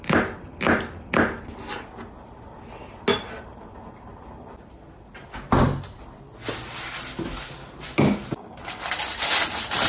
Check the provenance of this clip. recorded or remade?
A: recorded